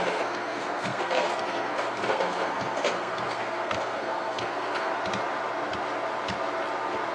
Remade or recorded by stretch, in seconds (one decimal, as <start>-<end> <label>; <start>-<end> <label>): 0.0-4.9 remade; 4.9-7.1 recorded